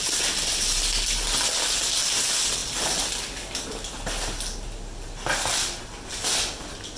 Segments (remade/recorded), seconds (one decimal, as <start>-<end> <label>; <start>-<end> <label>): 0.0-7.0 recorded